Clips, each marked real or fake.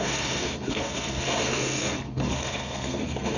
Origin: fake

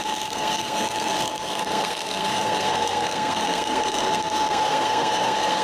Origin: fake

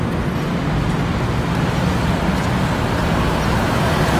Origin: real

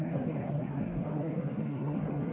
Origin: fake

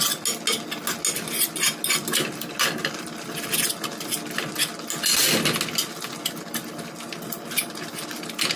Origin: real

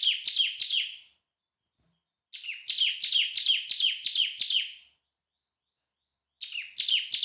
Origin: real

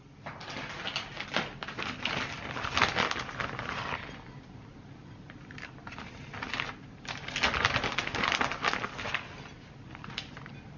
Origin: real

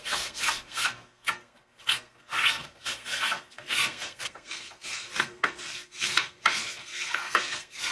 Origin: fake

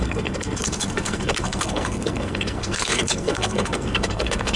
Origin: fake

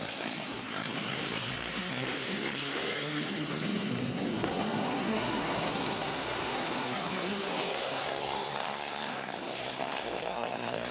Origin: fake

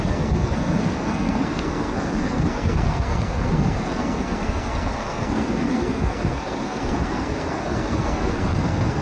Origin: fake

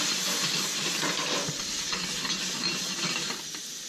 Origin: real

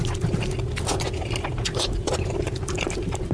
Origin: real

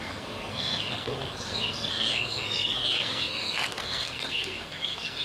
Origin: fake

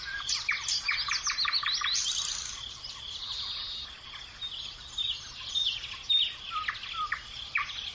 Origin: real